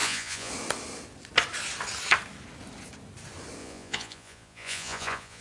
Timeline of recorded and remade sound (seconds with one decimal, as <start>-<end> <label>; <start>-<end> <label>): 0.0-0.5 remade; 0.5-3.6 recorded; 3.6-5.4 remade